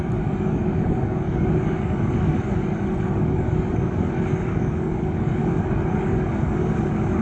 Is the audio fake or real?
fake